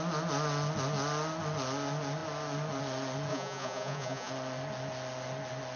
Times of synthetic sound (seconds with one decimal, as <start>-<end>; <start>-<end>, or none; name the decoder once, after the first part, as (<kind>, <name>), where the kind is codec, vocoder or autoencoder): 3.3-4.3 (vocoder, Vocos)

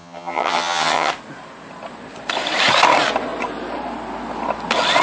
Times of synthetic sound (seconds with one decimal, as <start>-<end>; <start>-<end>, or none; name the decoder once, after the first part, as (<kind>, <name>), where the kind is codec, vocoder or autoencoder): 0.0-1.1 (vocoder, HiFi-GAN)